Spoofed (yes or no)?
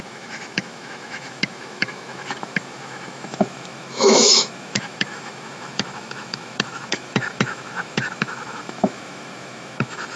yes